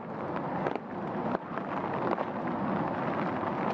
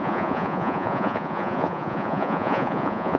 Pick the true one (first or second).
first